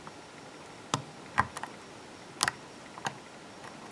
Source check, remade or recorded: recorded